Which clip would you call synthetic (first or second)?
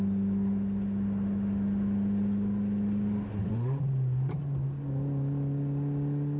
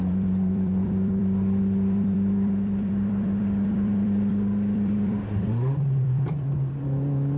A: second